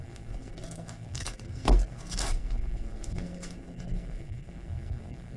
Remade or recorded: remade